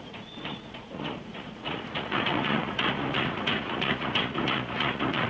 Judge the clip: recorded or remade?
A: remade